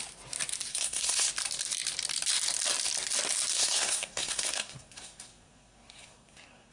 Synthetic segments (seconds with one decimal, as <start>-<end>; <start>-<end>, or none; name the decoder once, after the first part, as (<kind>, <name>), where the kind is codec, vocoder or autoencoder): 0.7-1.3 (codec, SNAC); 3.5-6.7